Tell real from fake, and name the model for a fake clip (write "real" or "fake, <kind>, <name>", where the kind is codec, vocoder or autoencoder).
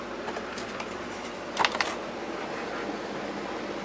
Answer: real